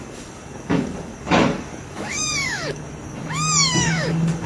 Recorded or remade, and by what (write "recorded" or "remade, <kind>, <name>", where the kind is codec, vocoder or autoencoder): remade, codec, DAC